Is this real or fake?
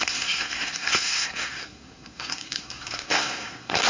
fake